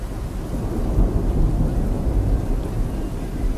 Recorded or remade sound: recorded